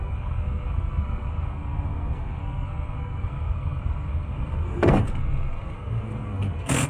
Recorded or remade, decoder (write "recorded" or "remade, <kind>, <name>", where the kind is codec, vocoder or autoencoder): remade, codec, SNAC